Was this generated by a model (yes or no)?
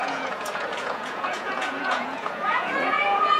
yes